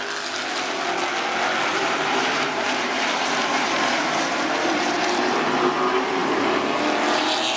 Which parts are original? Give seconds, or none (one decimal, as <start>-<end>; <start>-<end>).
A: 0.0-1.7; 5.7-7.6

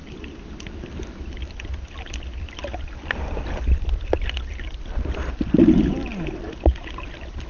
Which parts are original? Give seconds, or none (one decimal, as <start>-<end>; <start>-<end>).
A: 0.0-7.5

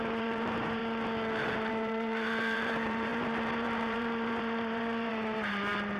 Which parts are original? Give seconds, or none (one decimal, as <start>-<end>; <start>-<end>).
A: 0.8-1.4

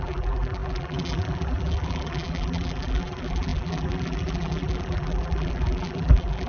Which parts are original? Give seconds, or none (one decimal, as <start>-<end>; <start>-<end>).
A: none

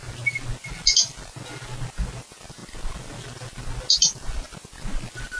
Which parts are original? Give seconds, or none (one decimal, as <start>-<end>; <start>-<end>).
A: 0.0-5.4

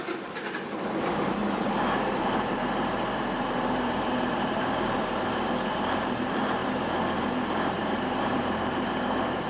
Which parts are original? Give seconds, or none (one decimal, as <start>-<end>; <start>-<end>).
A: 1.4-2.2; 6.6-7.7

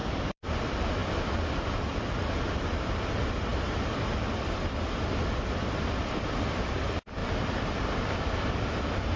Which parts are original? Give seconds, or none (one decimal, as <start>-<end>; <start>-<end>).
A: 1.0-2.2; 3.5-4.4

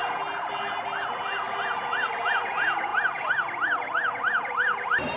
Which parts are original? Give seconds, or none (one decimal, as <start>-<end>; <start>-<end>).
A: 0.0-2.3; 2.9-4.2